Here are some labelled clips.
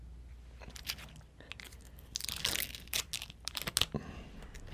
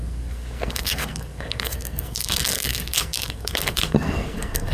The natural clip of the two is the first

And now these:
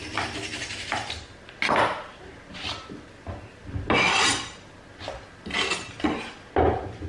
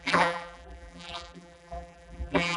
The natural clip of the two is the first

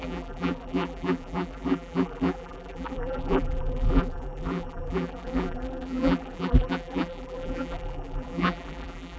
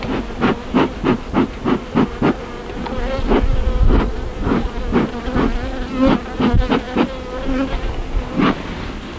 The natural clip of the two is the second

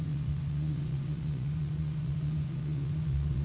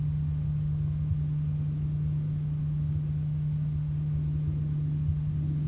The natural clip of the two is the second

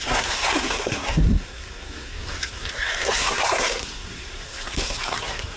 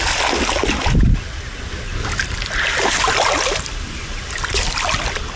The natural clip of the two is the second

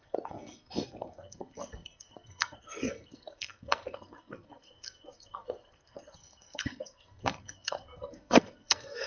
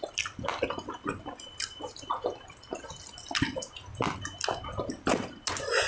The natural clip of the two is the second